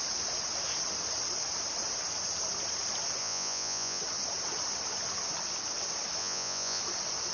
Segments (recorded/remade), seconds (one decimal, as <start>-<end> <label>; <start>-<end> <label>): 0.0-3.2 recorded; 3.2-4.0 remade; 4.0-6.2 recorded; 6.2-6.8 remade; 6.8-7.3 recorded